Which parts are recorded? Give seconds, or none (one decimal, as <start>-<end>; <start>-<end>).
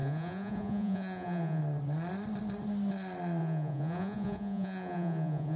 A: 1.6-3.4